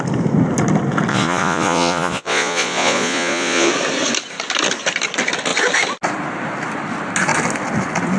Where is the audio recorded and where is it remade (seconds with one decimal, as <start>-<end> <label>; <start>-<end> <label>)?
0.0-1.1 recorded; 1.1-3.7 remade; 3.7-8.2 recorded

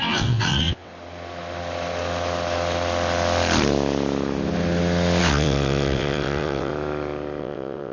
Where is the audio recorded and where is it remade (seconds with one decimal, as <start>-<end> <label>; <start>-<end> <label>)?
0.0-0.9 remade; 0.9-5.2 recorded; 5.2-6.7 remade; 6.7-7.4 recorded; 7.4-7.9 remade

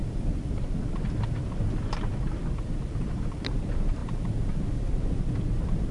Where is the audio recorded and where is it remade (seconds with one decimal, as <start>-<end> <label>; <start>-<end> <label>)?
0.0-3.5 remade; 3.5-5.9 recorded

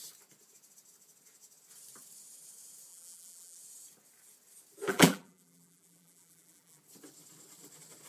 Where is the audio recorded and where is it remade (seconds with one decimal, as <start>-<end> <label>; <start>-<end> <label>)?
0.0-2.9 recorded; 2.9-3.6 remade; 3.6-4.9 recorded; 4.9-6.8 remade; 6.8-8.1 recorded

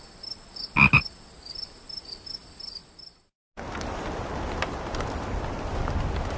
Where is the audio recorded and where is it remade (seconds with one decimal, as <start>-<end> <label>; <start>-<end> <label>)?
0.0-6.4 recorded

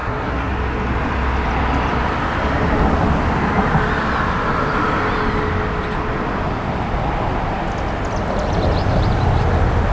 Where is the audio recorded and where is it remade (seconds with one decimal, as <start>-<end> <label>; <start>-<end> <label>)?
0.0-0.5 remade; 0.5-9.9 recorded

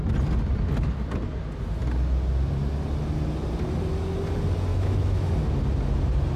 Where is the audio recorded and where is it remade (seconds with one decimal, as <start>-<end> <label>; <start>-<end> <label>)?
0.0-4.7 recorded; 4.7-5.3 remade; 5.3-6.4 recorded

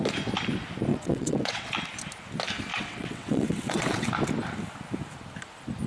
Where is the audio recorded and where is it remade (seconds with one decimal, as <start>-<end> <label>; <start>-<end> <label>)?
0.0-0.9 recorded; 0.9-1.7 remade; 1.7-2.7 recorded; 2.7-4.1 remade; 4.1-5.9 recorded